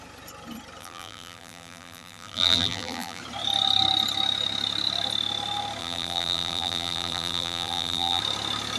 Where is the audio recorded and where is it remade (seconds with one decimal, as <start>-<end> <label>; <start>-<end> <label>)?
0.0-0.8 recorded; 0.8-3.2 remade; 3.2-5.8 recorded; 5.8-8.2 remade; 8.2-8.8 recorded

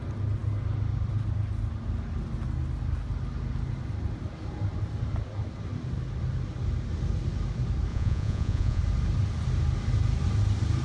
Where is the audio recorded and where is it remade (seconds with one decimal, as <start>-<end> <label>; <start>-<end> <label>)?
0.0-7.9 recorded; 7.9-8.8 remade; 8.8-10.8 recorded

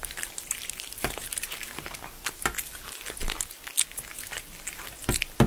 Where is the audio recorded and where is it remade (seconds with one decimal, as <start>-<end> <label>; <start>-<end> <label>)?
0.0-2.2 remade; 2.2-5.5 recorded

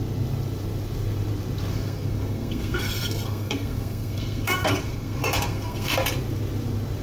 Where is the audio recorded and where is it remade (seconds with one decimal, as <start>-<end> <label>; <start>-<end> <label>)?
0.0-1.7 recorded; 1.7-5.9 remade; 5.9-7.0 recorded

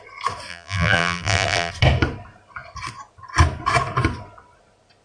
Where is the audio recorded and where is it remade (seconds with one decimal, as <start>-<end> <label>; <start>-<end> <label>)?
0.0-0.5 recorded; 0.5-1.7 remade; 1.7-5.0 recorded

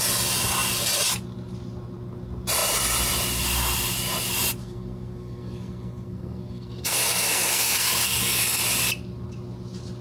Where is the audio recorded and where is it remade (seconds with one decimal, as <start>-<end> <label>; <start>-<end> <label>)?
0.0-4.6 recorded; 4.6-8.6 remade; 8.6-10.0 recorded

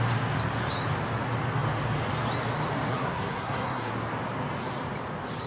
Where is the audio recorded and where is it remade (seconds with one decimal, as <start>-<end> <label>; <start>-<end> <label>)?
0.0-2.9 recorded; 2.9-3.9 remade; 3.9-5.5 recorded

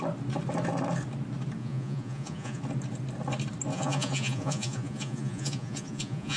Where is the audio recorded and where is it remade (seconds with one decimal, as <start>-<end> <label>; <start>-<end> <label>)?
0.0-1.6 recorded; 1.6-2.6 remade; 2.6-3.7 recorded; 3.7-6.4 remade